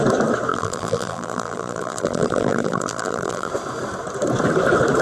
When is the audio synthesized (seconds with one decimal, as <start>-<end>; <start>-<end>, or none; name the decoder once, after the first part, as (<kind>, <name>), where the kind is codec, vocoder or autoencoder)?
0.5-3.5 (vocoder, BigVGAN v2)